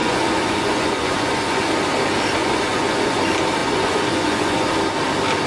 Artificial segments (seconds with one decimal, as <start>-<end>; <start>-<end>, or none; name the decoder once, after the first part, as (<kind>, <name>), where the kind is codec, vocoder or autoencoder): 0.0-1.7 (vocoder, Vocos); 2.4-3.2; 3.6-4.7